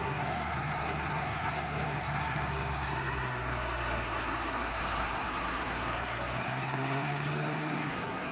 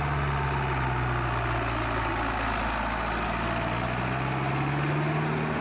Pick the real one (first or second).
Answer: second